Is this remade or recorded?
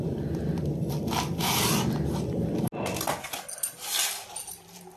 recorded